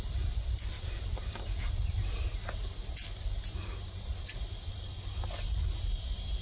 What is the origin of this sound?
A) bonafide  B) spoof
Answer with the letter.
A